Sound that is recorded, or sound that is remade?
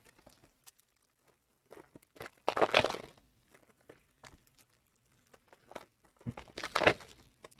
recorded